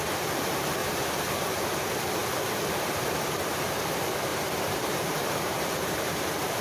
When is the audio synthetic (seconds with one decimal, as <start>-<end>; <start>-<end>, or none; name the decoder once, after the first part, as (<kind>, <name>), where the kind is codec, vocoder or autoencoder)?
0.8-1.3 (vocoder, BigVGAN v2); 4.3-6.6